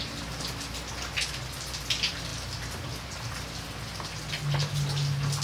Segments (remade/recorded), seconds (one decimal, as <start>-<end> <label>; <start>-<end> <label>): 0.0-5.4 recorded